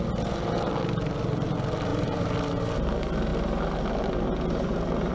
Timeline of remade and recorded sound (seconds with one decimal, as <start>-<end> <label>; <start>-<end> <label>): 0.0-5.1 recorded